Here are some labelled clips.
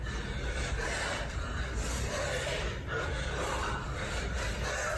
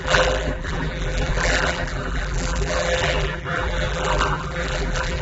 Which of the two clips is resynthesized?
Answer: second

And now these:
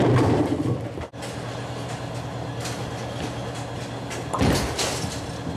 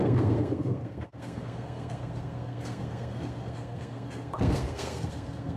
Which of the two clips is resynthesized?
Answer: second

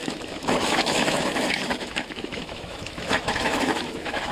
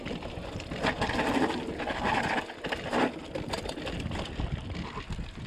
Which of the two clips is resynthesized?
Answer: first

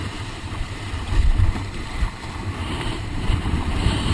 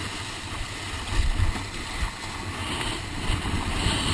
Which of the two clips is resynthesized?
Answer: first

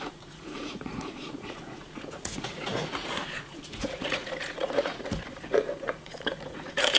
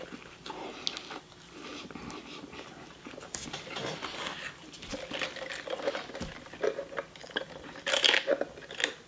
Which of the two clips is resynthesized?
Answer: first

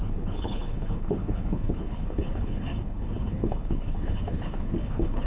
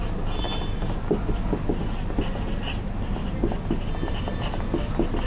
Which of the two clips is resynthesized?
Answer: first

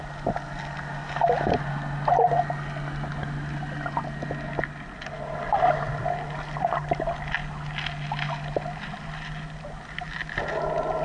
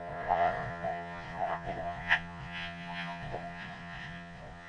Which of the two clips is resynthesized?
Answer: second